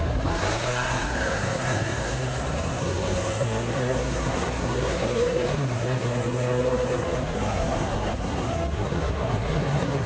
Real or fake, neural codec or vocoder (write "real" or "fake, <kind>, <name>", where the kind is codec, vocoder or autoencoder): fake, codec, SNAC